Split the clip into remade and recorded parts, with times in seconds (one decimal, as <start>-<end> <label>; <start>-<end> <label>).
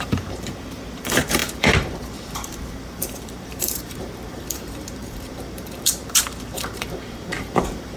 0.0-8.0 remade